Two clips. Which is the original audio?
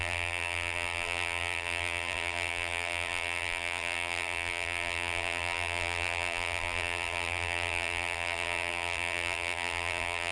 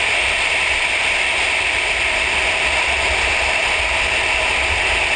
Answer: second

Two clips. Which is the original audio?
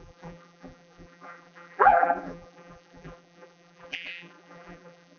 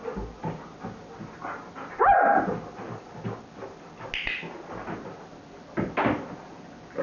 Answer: second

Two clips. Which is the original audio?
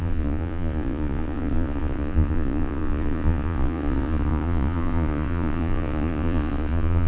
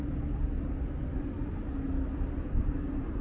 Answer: second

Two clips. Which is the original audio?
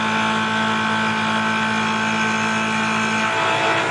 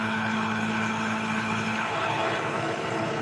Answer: first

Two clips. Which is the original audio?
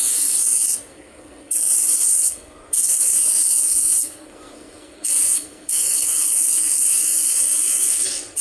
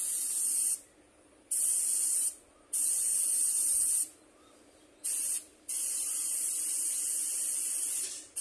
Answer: second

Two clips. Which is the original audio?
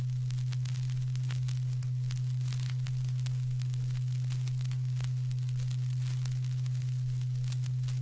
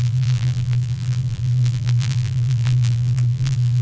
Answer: first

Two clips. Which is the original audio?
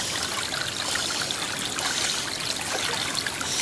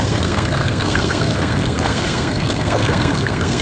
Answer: first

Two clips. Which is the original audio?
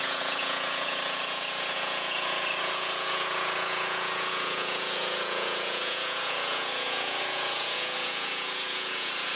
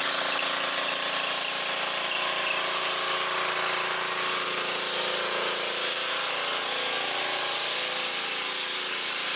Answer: second